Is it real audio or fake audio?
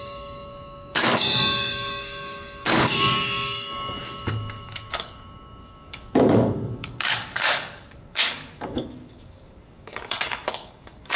fake